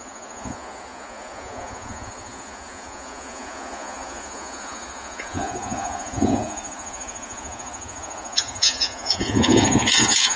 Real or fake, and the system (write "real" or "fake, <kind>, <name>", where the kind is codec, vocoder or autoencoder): fake, vocoder, Vocos